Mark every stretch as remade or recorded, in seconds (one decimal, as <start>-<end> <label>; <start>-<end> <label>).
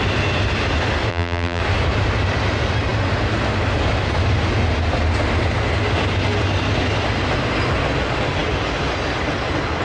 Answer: 0.0-1.1 recorded; 1.1-1.6 remade; 1.6-9.8 recorded